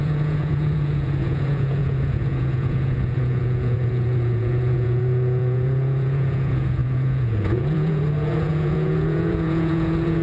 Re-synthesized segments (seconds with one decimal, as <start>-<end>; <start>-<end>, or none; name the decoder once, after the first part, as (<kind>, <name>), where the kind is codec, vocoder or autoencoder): 0.0-10.2 (vocoder, Vocos)